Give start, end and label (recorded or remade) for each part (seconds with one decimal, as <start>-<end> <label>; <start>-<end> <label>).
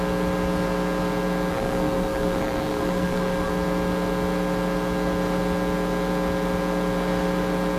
0.0-1.5 recorded; 1.5-3.5 remade; 3.5-7.8 recorded